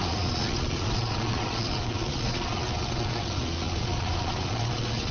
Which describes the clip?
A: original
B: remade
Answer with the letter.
B